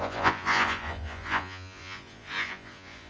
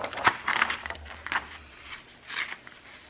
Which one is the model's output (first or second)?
first